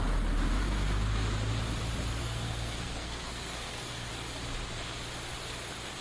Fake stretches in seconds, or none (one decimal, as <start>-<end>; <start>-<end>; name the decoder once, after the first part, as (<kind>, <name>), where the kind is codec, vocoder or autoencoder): 2.2-4.1 (codec, SNAC)